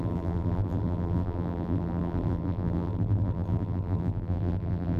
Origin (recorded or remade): remade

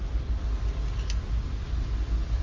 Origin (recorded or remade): remade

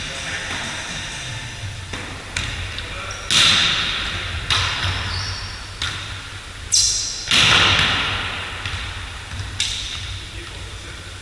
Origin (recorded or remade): recorded